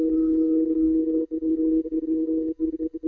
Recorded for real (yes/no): no